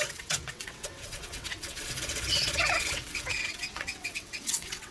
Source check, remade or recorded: remade